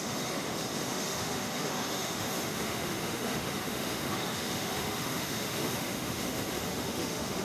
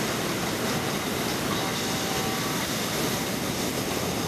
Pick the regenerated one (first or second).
first